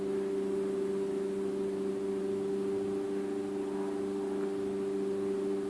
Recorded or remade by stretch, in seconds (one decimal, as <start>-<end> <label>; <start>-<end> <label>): 0.0-5.7 recorded